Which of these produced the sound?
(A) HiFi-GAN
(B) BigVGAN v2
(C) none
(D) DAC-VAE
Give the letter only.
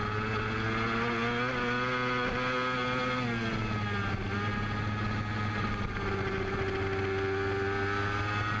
C